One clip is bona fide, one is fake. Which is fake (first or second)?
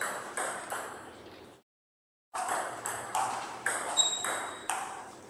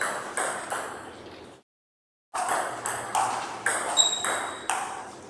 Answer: first